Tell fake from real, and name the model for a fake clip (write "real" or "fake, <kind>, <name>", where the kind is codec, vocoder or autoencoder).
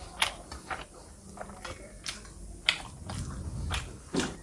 real